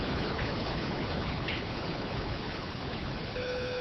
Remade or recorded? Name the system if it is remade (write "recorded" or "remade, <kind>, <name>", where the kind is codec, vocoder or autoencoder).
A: remade, codec, HILCodec